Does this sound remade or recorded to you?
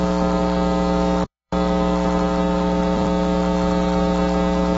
remade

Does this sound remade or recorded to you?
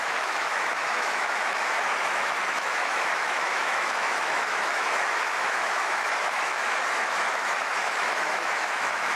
remade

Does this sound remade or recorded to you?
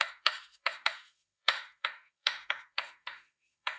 remade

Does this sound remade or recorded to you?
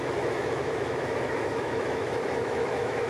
remade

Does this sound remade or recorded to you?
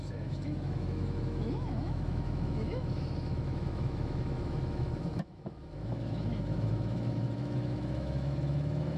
remade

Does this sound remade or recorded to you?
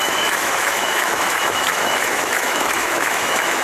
remade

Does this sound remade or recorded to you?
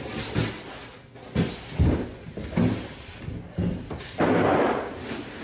recorded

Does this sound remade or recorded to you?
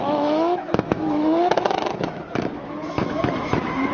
remade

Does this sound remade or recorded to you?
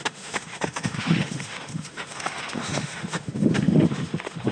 remade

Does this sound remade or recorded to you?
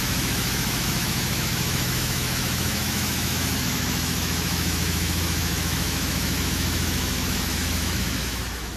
remade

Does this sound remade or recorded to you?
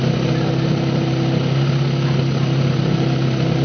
recorded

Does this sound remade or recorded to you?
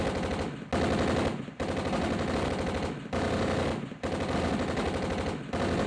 recorded